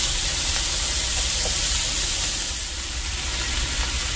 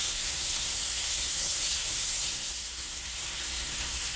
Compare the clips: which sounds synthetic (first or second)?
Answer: second